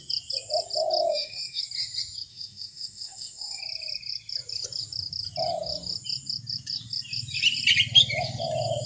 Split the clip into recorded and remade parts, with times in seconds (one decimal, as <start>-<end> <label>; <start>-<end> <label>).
0.0-1.1 recorded; 1.1-1.6 remade; 1.6-2.3 recorded; 2.3-3.6 remade; 3.6-8.9 recorded

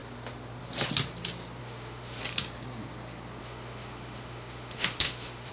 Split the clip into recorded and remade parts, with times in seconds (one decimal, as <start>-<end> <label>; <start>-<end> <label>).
0.0-1.6 recorded; 1.6-2.2 remade; 2.2-3.4 recorded; 3.4-5.5 remade

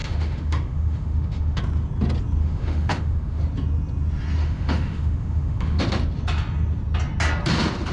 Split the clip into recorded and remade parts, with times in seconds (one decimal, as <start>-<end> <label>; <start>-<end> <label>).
0.0-1.6 remade; 1.6-2.4 recorded; 2.4-3.4 remade; 3.4-4.4 recorded; 4.4-5.8 remade; 5.8-7.9 recorded